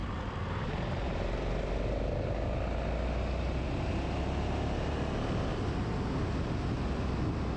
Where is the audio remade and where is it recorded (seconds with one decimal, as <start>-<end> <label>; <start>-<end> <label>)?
0.0-7.6 recorded

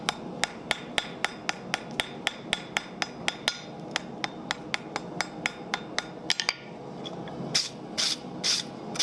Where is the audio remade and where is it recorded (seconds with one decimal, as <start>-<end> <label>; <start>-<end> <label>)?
0.0-9.0 recorded